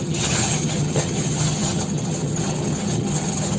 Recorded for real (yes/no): no